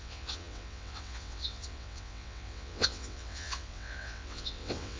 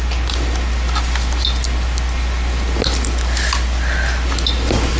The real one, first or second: second